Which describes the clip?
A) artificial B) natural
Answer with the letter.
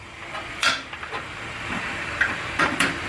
A